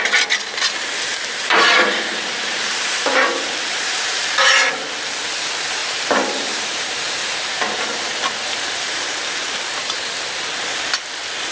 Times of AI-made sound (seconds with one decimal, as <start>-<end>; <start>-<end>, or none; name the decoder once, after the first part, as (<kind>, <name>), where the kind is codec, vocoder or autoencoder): 1.1-4.2 (vocoder, BigVGAN v2); 5.8-10.0